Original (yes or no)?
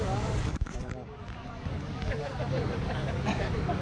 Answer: no